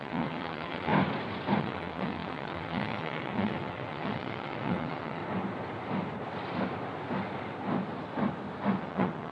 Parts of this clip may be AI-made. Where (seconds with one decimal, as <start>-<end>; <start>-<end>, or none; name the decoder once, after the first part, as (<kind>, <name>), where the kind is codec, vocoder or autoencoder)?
0.0-0.9 (vocoder, WaveNeXt); 1.6-5.2; 8.8-9.3